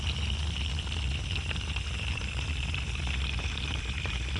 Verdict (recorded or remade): remade